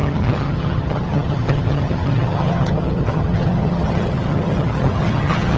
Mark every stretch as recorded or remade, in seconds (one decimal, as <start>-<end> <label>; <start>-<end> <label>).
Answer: 0.0-5.6 remade